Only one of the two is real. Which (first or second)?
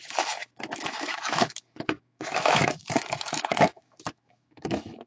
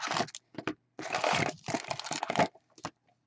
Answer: second